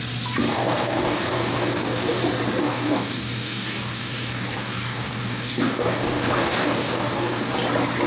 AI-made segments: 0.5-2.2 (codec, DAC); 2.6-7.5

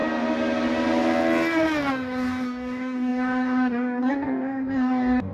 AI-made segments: 1.9-5.3 (codec, DAC)